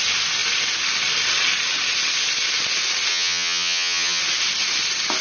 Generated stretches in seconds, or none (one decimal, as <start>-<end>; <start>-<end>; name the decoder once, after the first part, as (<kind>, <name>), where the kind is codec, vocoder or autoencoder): 3.1-4.2 (vocoder, HiFi-GAN)